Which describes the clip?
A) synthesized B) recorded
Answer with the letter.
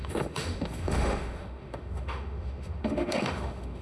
A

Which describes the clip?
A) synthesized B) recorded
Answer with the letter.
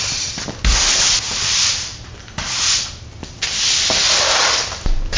B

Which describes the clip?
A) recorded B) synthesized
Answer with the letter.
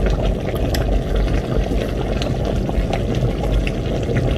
A